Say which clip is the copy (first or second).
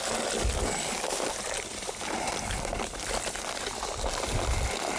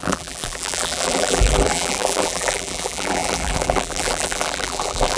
second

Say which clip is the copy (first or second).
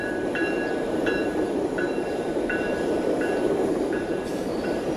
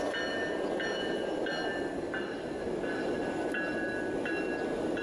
first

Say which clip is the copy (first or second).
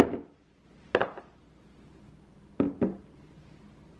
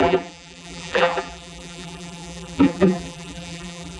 second